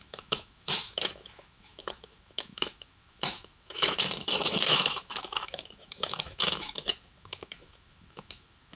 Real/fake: fake